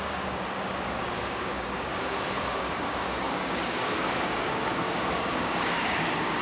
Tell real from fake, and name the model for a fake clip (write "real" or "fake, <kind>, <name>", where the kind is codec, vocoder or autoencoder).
fake, codec, DAC